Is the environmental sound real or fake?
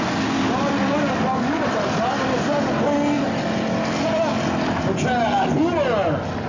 real